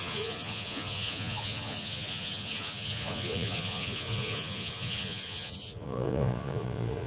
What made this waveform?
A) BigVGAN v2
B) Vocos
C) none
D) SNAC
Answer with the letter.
B